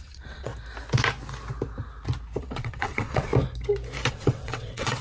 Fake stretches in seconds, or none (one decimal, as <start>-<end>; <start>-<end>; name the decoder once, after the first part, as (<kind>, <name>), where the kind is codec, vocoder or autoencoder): 0.0-0.5 (vocoder, WaveNeXt); 2.4-3.3; 4.1-5.0